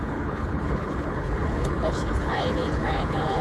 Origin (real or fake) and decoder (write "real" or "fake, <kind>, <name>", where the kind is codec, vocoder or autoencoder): fake, codec, HILCodec